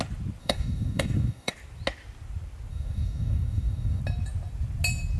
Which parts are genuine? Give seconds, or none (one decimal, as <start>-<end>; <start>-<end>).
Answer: 0.0-0.4; 1.5-2.7; 4.0-5.2